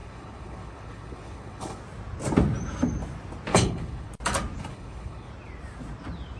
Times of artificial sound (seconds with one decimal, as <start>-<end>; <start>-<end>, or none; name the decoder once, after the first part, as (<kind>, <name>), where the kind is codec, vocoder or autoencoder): 0.0-1.8 (codec, HILCodec); 3.5-4.1; 4.7-5.3